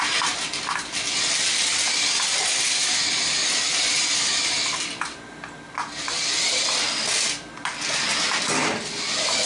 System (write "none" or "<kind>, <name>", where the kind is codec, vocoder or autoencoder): none